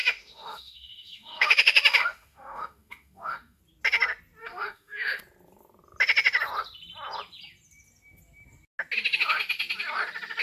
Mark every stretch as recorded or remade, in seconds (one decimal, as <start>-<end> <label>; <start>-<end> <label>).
0.0-3.6 remade; 3.6-4.4 recorded; 4.4-5.2 remade; 5.2-10.4 recorded